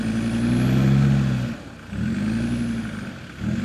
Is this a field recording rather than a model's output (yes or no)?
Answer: yes